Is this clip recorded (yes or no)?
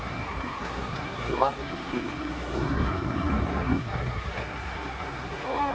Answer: no